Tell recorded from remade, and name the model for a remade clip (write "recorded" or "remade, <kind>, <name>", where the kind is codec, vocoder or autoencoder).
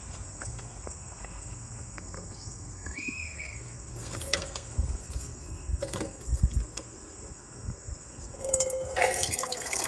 remade, codec, SNAC